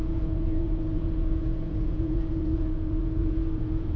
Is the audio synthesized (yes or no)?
yes